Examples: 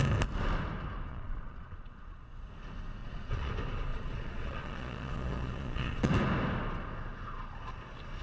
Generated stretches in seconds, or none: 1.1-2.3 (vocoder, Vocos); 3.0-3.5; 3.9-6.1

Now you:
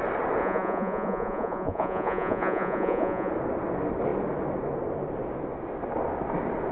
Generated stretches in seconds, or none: 0.4-3.3 (vocoder, Vocos)

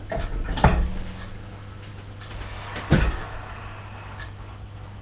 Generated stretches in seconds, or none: none

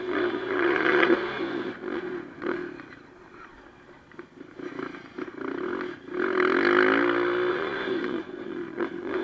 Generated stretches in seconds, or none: 0.0-2.6 (vocoder, Vocos); 7.5-9.2